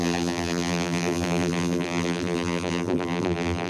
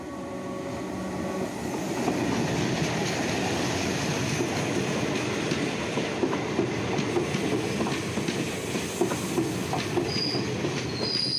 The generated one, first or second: first